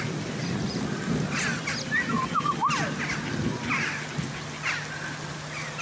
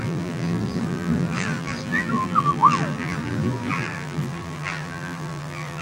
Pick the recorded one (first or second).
first